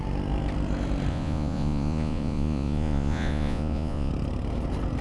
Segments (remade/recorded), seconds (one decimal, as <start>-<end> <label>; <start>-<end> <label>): 0.0-1.1 recorded; 1.1-4.1 remade; 4.1-5.0 recorded